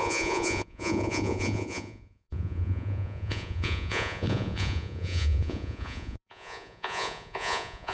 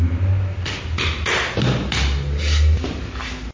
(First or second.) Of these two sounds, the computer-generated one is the first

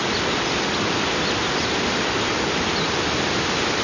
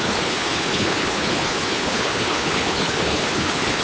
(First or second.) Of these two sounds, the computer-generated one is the second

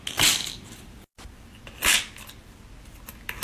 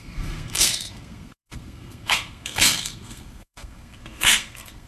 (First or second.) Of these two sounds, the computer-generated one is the second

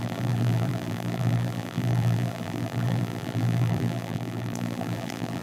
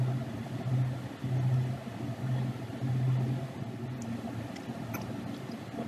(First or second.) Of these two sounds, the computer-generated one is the first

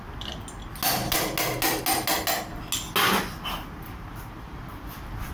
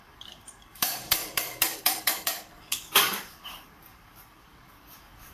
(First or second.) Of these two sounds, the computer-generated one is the second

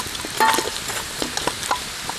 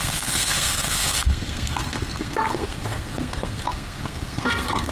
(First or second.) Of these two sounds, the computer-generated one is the second